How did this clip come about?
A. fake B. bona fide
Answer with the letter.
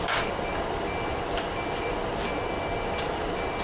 B